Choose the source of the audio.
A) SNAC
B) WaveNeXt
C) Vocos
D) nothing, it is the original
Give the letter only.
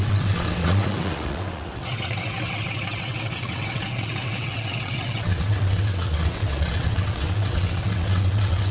B